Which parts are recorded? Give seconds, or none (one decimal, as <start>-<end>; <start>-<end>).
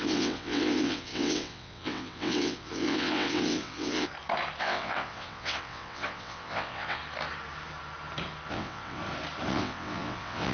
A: 4.1-4.6; 7.0-8.5; 9.0-9.5